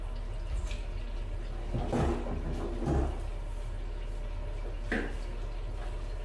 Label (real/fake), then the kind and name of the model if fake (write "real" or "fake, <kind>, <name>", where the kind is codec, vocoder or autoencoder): real